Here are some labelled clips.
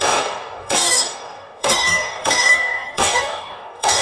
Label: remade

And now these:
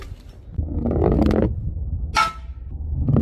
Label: recorded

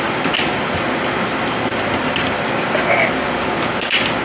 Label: recorded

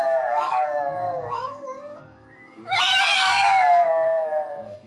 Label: remade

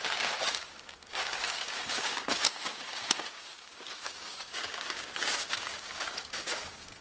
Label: remade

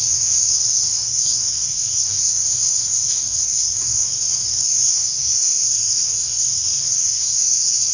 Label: remade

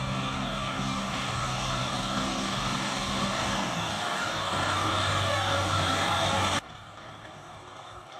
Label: remade